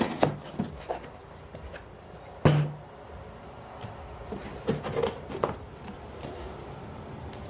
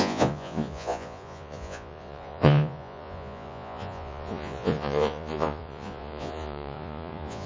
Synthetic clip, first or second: second